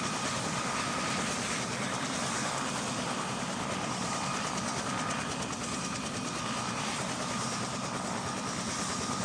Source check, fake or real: fake